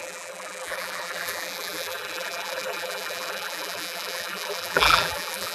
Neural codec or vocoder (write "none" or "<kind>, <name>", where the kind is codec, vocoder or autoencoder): vocoder, BigVGAN v2